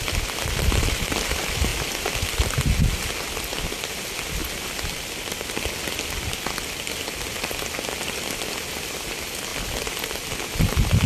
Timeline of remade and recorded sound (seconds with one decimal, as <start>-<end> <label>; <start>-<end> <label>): 0.0-11.1 recorded